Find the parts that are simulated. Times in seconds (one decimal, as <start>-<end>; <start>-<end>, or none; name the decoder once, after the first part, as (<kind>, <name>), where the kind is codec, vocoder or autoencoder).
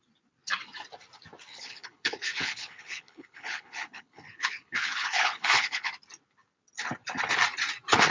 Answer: 1.5-5.9 (codec, HILCodec)